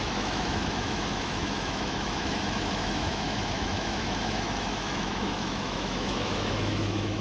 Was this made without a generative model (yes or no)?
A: no